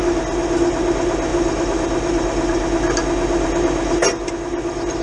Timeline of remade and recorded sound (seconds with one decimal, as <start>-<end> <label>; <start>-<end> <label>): 0.0-5.0 recorded